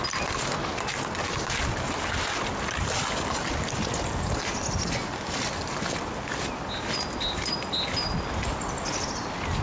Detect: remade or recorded recorded